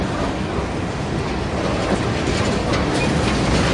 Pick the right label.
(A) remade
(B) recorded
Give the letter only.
B